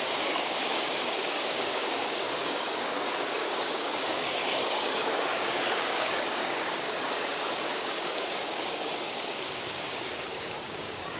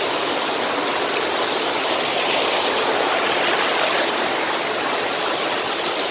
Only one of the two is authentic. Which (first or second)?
second